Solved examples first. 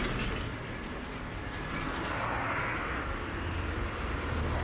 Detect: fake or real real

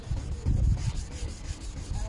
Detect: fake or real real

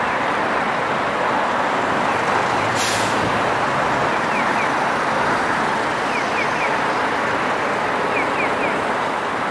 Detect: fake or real real